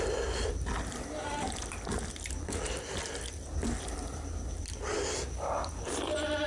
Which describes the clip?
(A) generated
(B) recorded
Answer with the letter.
B